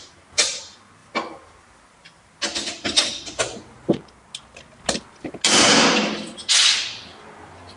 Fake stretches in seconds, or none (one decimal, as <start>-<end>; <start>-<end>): none